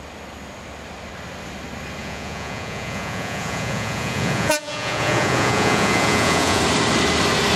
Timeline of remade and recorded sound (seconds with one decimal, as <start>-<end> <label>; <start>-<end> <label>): 0.0-2.0 recorded; 2.0-6.6 remade; 6.6-7.6 recorded